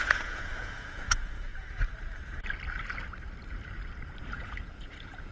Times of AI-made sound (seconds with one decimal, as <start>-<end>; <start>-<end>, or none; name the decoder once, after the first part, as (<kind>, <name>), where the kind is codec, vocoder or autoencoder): 0.0-1.5 (vocoder, Vocos); 4.2-5.3